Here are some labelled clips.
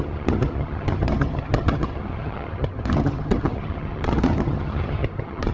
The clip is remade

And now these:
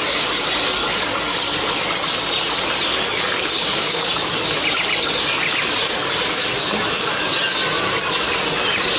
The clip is recorded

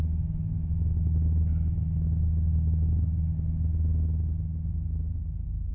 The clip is remade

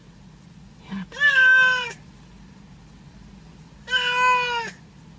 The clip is recorded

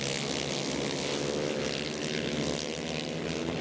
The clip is recorded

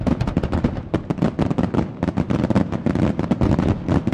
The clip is recorded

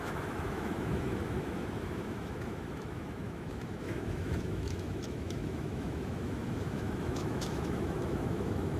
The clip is remade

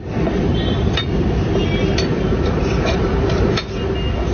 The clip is recorded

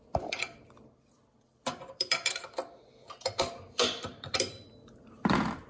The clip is remade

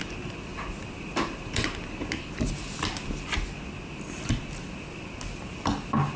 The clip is recorded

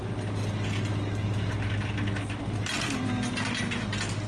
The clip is recorded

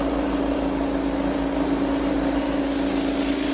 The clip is recorded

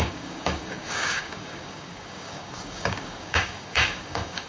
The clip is remade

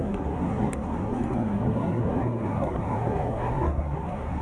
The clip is remade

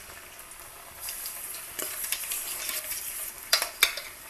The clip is remade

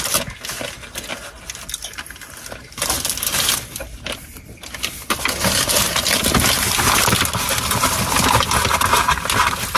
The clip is recorded